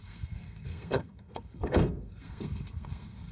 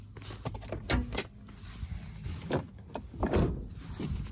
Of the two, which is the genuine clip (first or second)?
second